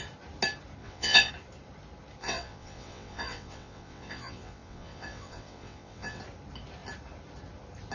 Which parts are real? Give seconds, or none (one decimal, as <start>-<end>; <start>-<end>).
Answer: 0.0-0.8; 1.3-2.2; 6.2-7.9